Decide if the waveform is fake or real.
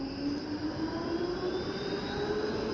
real